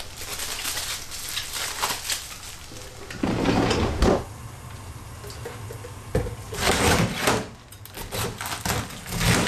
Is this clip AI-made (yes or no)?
no